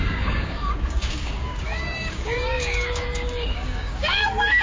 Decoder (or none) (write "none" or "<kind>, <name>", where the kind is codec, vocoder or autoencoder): codec, DAC